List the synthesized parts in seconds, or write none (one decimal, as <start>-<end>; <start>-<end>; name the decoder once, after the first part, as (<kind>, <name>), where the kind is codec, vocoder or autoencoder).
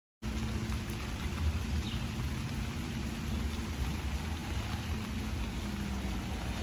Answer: 1.1-3.9 (vocoder, BigVGAN v2)